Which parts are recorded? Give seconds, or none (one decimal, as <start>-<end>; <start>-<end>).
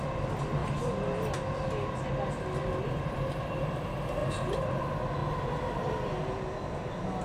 0.0-7.2